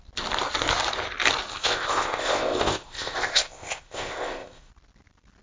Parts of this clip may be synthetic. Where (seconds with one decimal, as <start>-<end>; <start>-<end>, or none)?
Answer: 1.5-4.7